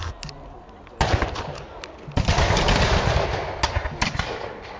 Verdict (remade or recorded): recorded